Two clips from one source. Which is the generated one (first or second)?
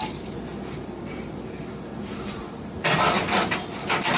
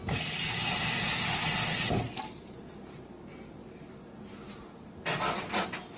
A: first